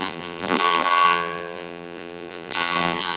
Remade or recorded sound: remade